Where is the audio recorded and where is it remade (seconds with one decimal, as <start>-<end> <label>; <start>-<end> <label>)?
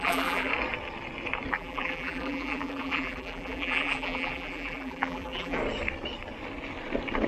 0.0-0.5 remade; 0.5-1.5 recorded; 1.5-5.6 remade; 5.6-7.3 recorded